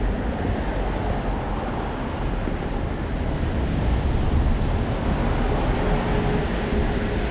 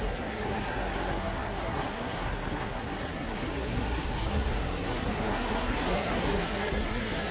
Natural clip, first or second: first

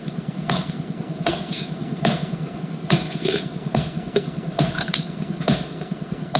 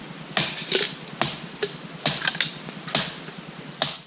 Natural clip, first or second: second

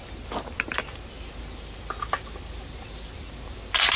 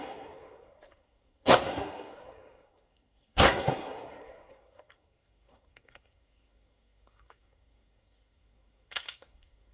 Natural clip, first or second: first